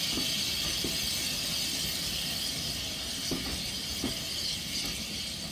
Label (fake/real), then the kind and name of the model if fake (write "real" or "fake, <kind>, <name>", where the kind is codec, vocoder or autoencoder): real